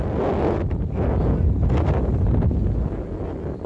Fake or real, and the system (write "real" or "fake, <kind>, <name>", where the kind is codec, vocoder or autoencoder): real